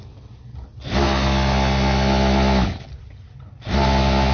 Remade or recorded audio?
recorded